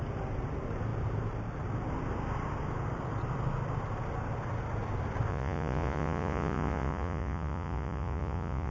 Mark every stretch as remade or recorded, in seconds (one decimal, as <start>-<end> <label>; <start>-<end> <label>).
0.0-5.3 recorded; 5.3-8.7 remade